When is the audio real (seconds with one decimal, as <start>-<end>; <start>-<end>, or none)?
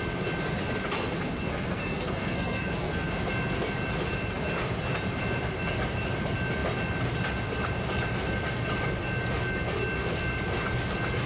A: 0.0-1.5; 3.1-11.3